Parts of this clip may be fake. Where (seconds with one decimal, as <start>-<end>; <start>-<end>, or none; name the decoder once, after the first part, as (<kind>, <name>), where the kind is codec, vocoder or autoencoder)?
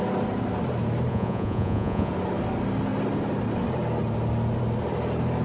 1.1-2.1 (vocoder, Vocos)